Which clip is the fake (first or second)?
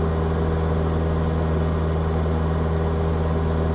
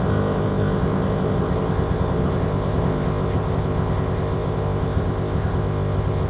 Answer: second